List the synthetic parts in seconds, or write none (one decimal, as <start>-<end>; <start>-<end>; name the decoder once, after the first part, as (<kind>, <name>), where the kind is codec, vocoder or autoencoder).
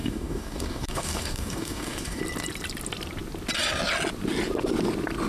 0.0-2.2 (codec, DAC)